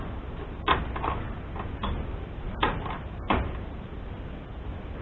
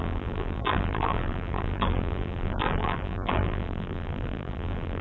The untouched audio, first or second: first